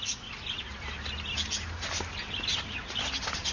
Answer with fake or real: real